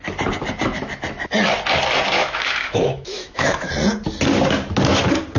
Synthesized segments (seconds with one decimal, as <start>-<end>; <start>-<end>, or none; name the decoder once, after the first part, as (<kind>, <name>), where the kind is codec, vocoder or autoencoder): 2.2-3.7 (autoencoder, DAC-VAE)